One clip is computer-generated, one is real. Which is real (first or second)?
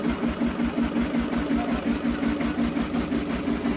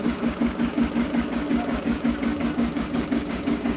first